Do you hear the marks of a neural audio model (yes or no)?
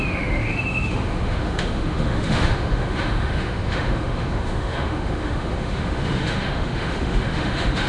yes